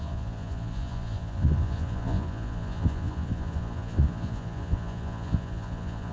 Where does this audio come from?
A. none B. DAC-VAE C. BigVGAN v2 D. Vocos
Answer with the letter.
D